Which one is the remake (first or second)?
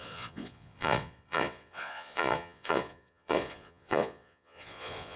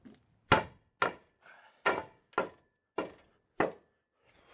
first